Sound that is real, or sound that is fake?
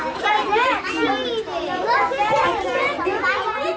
real